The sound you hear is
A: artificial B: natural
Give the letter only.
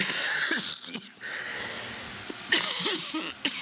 B